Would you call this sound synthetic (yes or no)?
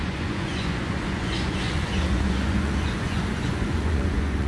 yes